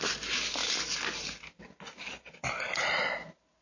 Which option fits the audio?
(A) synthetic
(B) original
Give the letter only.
B